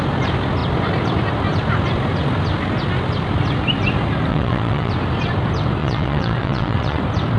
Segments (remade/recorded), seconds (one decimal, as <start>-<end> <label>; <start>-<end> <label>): 0.0-4.3 recorded; 4.3-4.9 remade; 4.9-5.8 recorded; 5.8-7.0 remade; 7.0-7.4 recorded